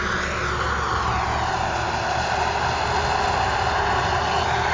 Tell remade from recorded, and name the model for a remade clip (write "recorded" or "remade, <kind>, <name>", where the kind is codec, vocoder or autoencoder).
recorded